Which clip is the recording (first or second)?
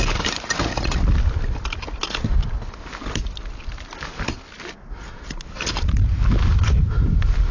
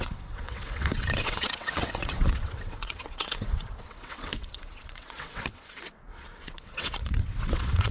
first